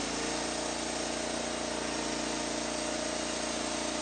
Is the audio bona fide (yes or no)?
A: yes